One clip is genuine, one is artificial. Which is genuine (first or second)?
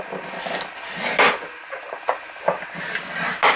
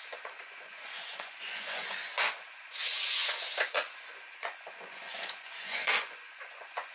first